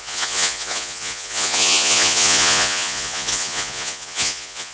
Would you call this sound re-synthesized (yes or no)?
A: yes